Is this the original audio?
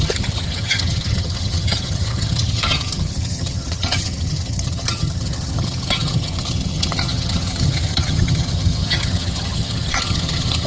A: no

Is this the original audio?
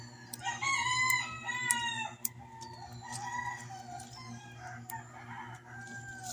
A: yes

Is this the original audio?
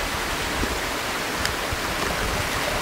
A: yes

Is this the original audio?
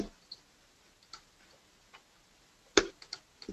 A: yes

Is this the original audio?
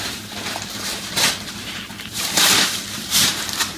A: no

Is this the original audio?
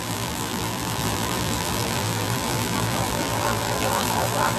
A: no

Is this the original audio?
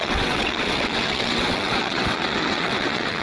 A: no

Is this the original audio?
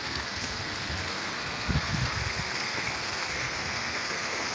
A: no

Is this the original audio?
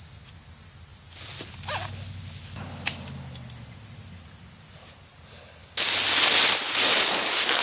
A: yes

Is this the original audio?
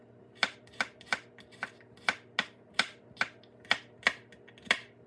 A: yes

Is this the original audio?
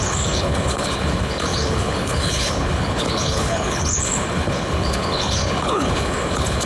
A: no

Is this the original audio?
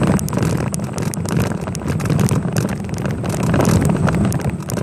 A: yes